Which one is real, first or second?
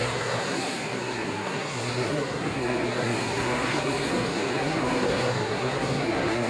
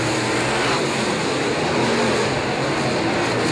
second